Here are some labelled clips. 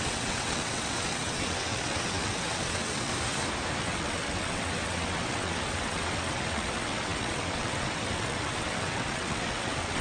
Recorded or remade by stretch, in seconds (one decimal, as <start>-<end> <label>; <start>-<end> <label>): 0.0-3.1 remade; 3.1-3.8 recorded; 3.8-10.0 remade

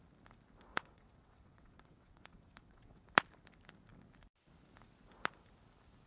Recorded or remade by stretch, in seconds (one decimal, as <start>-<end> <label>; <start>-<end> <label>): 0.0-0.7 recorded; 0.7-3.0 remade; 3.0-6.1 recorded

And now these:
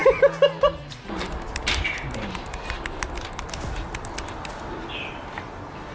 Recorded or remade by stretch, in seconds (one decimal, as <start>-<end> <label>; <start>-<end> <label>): 0.0-5.9 recorded